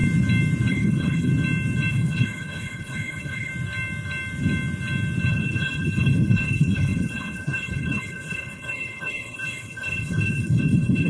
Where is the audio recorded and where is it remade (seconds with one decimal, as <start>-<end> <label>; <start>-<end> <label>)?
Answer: 0.0-0.7 recorded; 0.7-1.3 remade; 1.3-1.9 recorded; 1.9-3.5 remade; 3.5-5.3 recorded; 5.3-11.1 remade